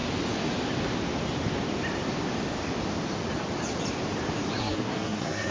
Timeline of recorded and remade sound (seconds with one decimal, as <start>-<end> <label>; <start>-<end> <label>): 0.0-4.6 recorded; 4.6-5.5 remade